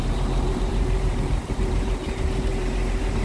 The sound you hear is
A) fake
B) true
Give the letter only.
A